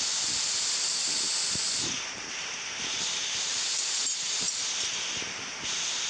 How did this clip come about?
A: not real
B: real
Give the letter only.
B